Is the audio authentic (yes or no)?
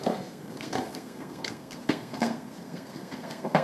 no